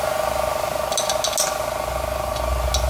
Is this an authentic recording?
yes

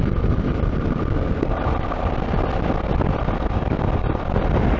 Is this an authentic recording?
yes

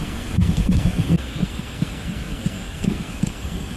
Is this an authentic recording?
no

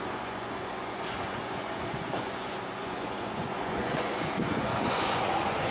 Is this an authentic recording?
no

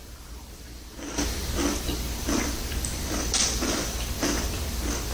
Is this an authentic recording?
no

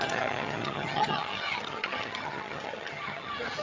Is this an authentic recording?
no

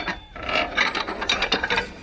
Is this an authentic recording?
no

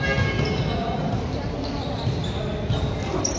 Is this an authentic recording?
yes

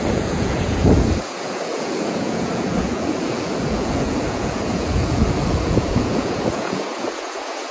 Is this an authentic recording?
no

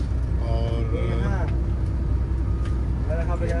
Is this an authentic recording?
yes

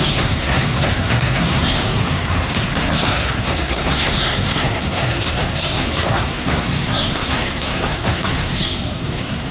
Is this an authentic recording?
no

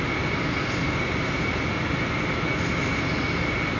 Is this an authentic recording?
yes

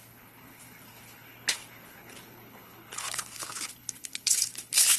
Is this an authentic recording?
no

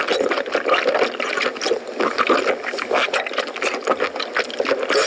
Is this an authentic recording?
yes